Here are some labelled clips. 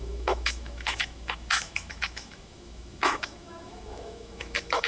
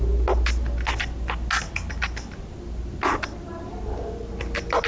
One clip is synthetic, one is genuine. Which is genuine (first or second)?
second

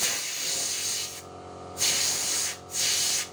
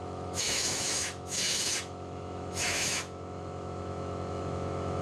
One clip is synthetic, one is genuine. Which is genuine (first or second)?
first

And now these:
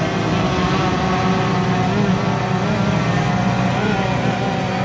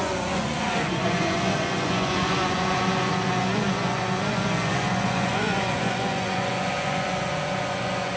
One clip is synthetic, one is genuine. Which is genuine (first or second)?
first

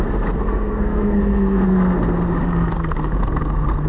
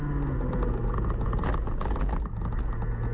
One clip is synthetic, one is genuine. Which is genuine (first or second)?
second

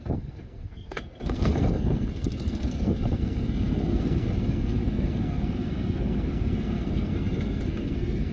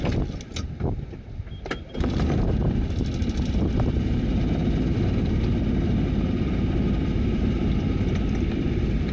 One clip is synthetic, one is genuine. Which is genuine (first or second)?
second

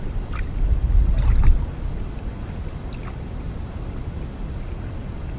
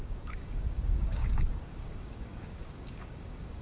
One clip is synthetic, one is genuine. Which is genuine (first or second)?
first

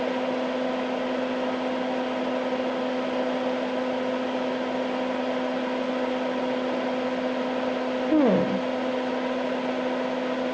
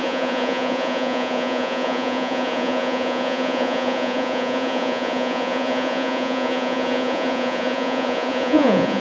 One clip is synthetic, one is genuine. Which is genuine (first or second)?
first